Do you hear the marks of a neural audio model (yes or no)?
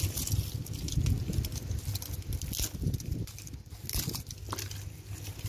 no